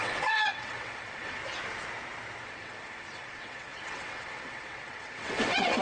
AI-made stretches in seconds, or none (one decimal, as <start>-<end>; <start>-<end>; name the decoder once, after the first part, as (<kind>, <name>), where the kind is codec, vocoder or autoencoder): 0.0-1.4 (vocoder, WaveNeXt); 2.4-5.8